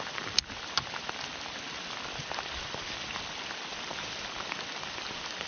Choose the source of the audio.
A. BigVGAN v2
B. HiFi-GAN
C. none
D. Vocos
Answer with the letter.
C